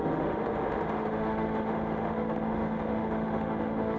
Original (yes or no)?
no